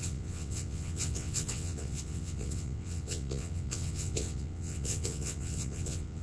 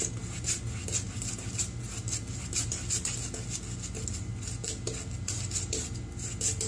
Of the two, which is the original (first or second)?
second